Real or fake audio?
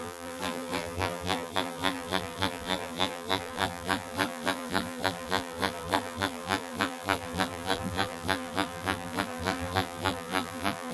fake